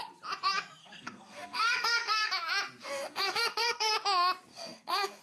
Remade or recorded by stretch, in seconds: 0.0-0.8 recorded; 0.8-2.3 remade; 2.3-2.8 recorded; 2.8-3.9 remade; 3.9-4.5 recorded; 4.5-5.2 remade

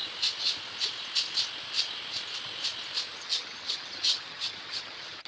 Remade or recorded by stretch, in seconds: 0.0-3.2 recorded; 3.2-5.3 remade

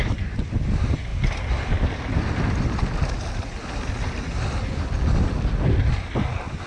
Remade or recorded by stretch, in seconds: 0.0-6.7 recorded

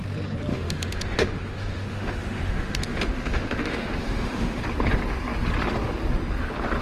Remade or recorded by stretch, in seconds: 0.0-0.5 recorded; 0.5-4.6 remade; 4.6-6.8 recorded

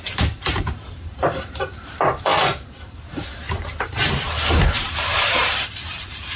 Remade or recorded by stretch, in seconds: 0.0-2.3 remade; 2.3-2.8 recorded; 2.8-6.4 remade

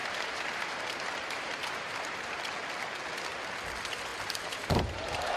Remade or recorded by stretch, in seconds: 0.0-2.4 remade; 2.4-4.1 recorded; 4.1-5.4 remade

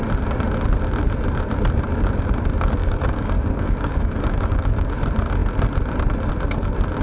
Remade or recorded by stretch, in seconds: 0.0-2.8 recorded; 2.8-4.9 remade; 4.9-7.0 recorded